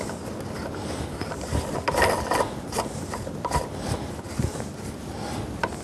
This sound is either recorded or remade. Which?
recorded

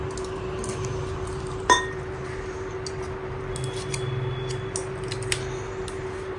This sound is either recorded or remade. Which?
recorded